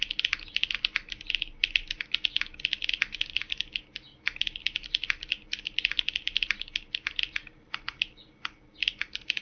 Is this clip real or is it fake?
real